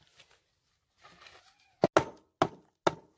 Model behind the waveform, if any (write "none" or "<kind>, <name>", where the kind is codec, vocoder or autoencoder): none